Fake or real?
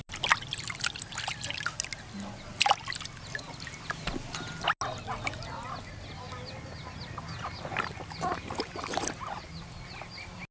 real